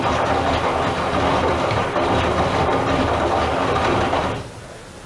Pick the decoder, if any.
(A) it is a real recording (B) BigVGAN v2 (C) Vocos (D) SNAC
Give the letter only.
A